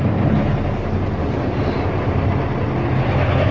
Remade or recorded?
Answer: recorded